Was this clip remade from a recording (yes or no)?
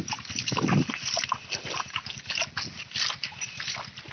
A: no